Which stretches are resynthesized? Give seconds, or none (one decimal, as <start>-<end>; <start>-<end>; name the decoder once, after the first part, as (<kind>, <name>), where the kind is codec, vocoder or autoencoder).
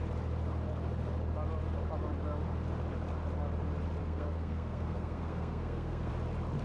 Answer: 4.0-6.1 (codec, SNAC)